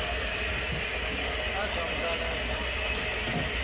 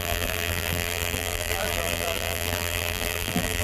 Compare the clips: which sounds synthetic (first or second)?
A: second